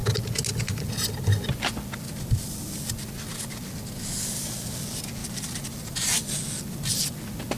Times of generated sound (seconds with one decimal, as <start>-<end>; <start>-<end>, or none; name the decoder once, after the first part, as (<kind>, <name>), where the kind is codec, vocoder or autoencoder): 5.2-5.9 (vocoder, BigVGAN v2)